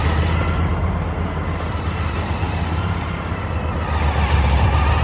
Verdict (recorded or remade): recorded